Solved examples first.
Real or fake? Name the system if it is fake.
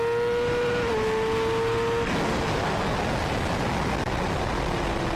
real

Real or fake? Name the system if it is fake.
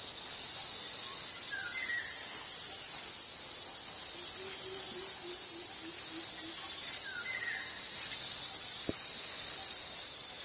real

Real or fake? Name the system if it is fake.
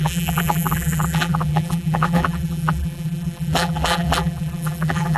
fake, vocoder, BigVGAN v2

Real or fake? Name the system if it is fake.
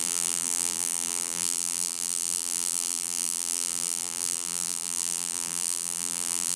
fake, vocoder, BigVGAN v2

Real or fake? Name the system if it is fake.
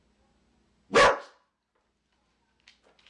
real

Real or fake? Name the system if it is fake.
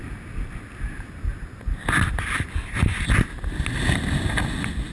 real